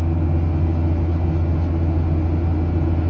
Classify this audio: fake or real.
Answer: real